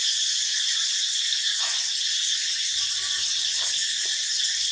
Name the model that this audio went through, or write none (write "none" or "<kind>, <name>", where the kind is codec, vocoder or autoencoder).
none